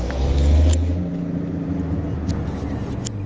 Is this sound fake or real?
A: real